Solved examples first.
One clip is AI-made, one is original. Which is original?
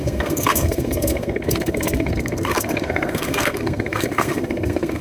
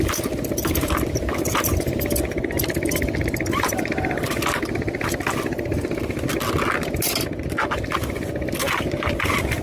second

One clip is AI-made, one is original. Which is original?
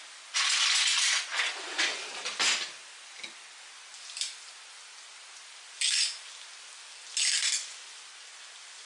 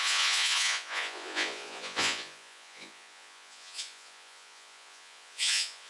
first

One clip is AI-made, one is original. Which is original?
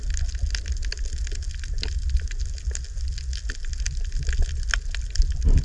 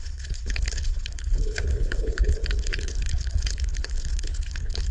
first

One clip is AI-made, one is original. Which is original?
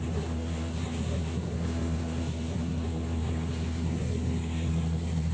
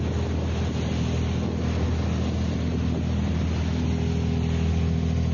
second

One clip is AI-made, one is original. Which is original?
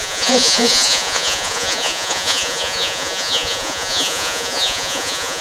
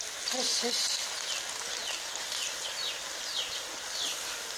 second